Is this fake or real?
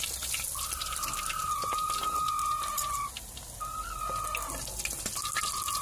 real